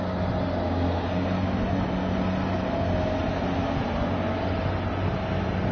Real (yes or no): yes